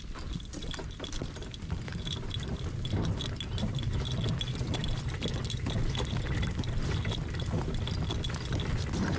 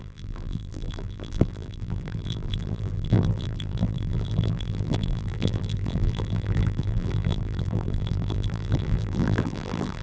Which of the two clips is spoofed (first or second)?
second